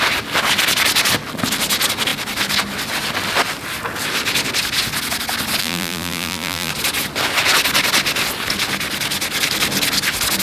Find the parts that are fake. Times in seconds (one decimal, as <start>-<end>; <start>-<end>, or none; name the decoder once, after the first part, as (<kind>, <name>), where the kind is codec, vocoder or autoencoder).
5.6-6.7 (vocoder, BigVGAN v2)